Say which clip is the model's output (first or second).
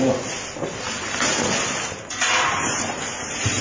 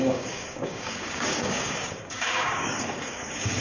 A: second